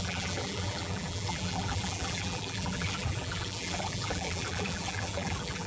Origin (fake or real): fake